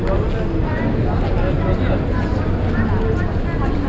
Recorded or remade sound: recorded